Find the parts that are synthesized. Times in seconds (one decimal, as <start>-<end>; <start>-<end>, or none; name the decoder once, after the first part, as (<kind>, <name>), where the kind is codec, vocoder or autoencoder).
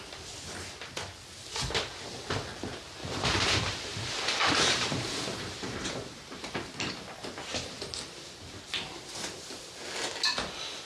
3.0-6.9 (vocoder, BigVGAN v2)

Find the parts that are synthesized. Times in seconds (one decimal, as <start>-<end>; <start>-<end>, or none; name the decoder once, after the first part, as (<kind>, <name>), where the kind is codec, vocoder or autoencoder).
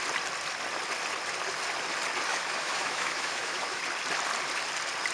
2.3-3.8 (autoencoder, DAC-VAE)